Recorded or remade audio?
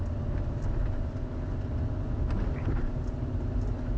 recorded